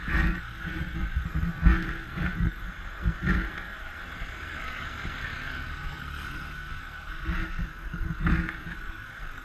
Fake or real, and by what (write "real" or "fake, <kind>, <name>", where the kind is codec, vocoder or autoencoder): fake, codec, SNAC